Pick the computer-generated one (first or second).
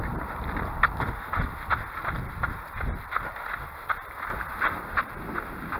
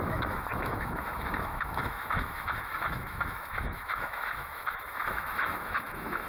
second